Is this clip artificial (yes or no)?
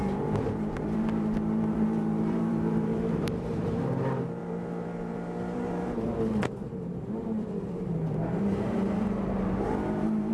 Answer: yes